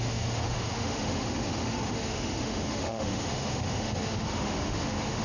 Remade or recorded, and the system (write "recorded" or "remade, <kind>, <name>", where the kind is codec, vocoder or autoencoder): remade, autoencoder, DAC-VAE